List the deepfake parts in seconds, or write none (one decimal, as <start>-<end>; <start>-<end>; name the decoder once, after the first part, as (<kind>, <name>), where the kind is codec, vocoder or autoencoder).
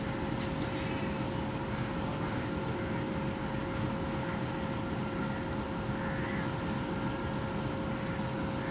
none